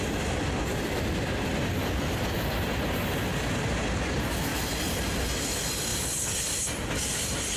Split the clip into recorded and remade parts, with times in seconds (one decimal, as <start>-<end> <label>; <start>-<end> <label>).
0.0-7.6 recorded

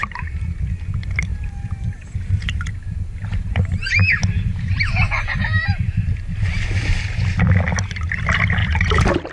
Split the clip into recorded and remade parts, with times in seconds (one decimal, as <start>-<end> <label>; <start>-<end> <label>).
0.0-1.3 recorded; 1.3-5.9 remade; 5.9-8.6 recorded; 8.6-9.3 remade

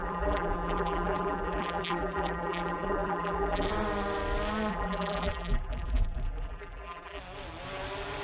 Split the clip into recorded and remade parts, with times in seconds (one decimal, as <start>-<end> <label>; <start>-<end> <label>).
0.0-3.7 remade; 3.7-4.7 recorded; 4.7-7.2 remade; 7.2-8.2 recorded

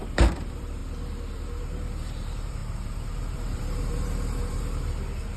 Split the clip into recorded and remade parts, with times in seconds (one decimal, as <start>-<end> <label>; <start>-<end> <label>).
0.0-0.8 remade; 0.8-1.6 recorded; 1.6-5.4 remade

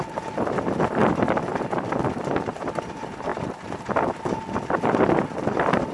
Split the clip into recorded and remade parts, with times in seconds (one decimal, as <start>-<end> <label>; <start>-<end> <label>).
0.0-1.0 recorded; 1.0-1.6 remade; 1.6-3.3 recorded; 3.3-3.8 remade; 3.8-5.9 recorded

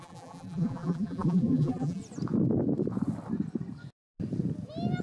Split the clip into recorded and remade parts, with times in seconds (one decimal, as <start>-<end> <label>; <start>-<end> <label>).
0.0-2.0 remade; 2.0-5.0 recorded

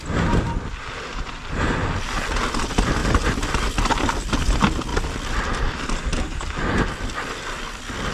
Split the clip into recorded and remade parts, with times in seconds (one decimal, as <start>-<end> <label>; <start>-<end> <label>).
0.0-8.1 recorded

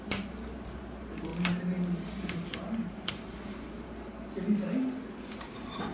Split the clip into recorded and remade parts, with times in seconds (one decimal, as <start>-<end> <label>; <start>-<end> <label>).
0.0-4.1 remade; 4.1-5.3 recorded; 5.3-5.9 remade